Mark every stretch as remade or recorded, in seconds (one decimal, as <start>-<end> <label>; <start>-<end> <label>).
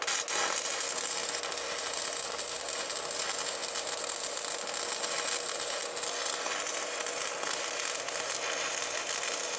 0.0-9.6 recorded